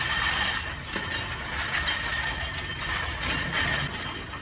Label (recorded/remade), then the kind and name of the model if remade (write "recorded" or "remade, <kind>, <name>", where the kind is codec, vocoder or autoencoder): recorded